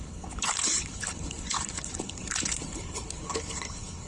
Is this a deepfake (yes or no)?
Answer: yes